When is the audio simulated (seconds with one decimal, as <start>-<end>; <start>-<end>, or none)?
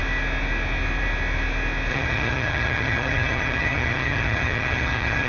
1.9-5.3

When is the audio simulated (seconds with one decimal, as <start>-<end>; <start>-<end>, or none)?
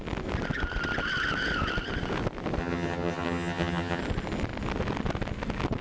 2.6-4.0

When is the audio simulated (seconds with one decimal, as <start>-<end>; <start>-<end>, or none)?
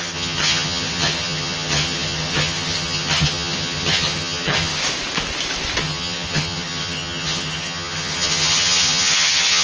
0.0-4.8; 5.8-9.6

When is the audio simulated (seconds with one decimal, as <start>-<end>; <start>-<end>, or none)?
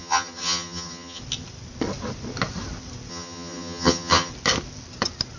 0.0-1.2; 3.1-4.3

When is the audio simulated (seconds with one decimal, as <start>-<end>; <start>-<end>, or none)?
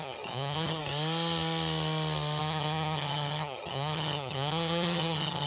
0.0-0.8; 2.4-5.5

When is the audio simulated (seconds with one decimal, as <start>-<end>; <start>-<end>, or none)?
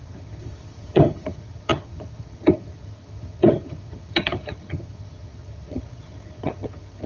0.0-7.1